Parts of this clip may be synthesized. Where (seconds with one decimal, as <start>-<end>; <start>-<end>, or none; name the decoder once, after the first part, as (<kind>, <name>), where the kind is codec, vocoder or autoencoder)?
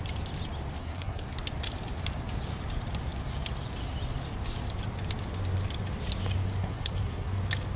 0.8-1.3 (codec, SNAC); 6.6-7.3